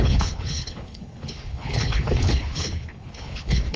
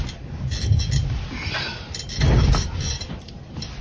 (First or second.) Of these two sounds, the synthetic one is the first